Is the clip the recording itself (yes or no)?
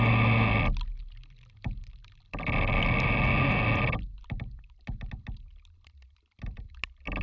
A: yes